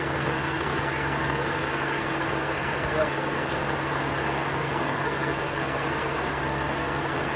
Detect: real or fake fake